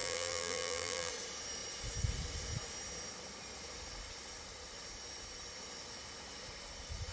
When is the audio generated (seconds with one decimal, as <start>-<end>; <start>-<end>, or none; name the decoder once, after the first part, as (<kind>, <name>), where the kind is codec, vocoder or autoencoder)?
0.0-1.1 (vocoder, BigVGAN v2)